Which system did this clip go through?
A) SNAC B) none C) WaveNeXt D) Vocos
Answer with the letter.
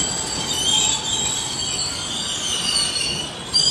B